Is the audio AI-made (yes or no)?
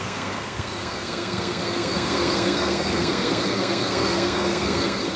yes